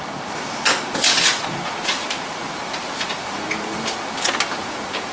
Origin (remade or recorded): recorded